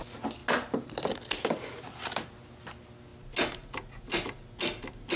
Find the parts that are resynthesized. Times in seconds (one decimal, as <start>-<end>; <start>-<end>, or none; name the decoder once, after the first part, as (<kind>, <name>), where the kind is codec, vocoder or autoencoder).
none